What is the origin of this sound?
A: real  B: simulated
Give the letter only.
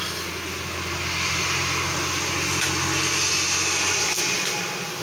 A